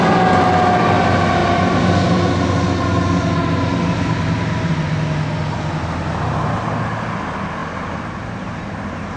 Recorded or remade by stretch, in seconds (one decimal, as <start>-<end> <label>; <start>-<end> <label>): 0.0-9.2 recorded